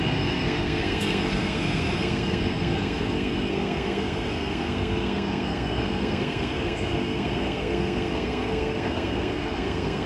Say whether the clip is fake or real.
fake